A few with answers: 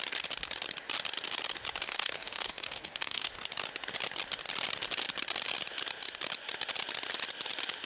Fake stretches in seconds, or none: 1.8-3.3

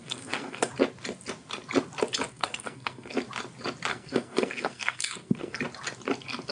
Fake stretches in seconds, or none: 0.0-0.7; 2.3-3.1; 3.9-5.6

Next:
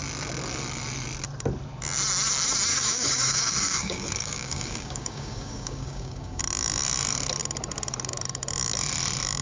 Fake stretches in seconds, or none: 2.7-6.4